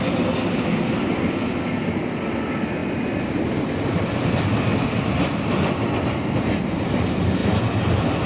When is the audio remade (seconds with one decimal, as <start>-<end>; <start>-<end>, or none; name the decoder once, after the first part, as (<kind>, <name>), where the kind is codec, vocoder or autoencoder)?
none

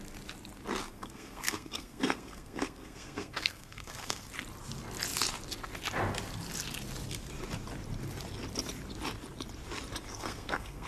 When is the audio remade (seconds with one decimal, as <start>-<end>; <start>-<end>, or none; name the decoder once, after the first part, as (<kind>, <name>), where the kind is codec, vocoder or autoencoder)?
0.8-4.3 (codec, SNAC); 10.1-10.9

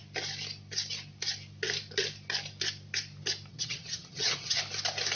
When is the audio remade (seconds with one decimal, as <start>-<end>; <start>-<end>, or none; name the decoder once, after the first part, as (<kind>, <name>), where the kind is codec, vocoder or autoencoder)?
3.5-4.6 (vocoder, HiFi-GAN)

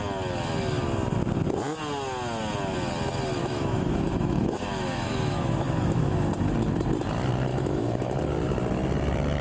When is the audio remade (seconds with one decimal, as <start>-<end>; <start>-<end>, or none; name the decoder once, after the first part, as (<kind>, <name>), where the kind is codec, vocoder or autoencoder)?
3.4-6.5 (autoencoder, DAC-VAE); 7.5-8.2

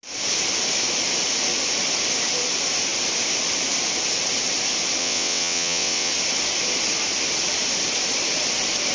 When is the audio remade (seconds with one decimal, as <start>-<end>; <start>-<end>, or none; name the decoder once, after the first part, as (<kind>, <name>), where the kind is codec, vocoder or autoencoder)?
5.0-6.1 (vocoder, WaveNeXt)